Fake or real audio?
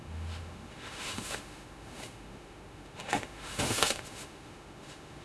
fake